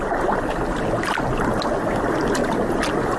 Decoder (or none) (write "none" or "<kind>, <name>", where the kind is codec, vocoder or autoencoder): none